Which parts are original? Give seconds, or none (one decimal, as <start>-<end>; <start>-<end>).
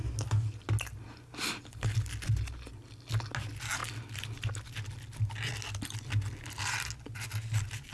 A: 0.0-7.9